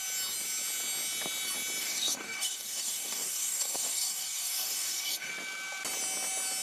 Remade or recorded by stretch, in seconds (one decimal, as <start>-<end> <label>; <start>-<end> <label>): 0.0-1.8 recorded; 1.8-5.3 remade; 5.3-6.6 recorded